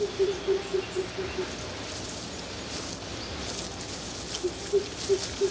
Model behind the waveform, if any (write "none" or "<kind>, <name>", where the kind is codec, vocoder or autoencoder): none